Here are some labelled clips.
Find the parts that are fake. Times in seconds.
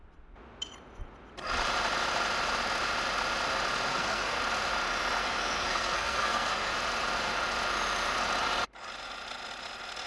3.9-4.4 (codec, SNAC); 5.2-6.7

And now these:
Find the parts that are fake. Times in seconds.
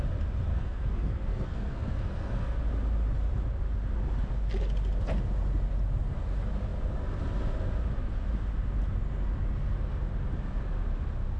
0.5-2.6 (codec, SNAC)